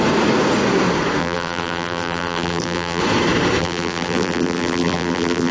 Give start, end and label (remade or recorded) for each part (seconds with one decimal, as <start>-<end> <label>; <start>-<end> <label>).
0.0-1.2 recorded; 1.2-3.0 remade; 3.0-3.6 recorded; 3.6-5.5 remade